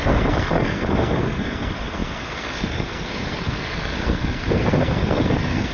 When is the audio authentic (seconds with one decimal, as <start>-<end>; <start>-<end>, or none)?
none